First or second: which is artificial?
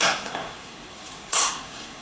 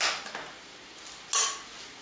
first